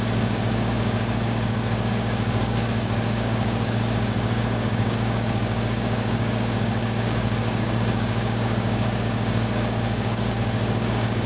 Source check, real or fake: fake